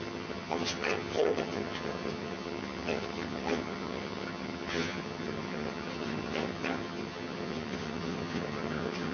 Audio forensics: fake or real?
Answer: fake